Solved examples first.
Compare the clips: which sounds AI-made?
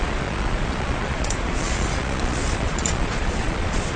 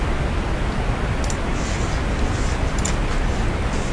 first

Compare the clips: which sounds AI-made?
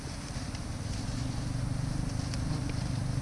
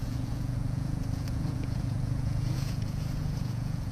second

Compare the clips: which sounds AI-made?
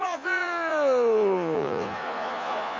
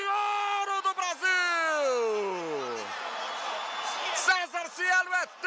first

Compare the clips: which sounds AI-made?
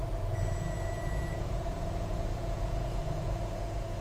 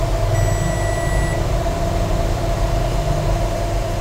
first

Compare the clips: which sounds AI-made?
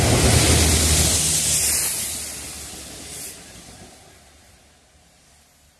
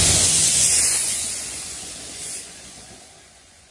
second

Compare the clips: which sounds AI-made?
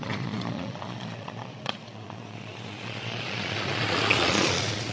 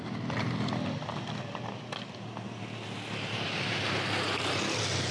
first